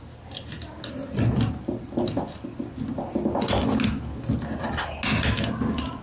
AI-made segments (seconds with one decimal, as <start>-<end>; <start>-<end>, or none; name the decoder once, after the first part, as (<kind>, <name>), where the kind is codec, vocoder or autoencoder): none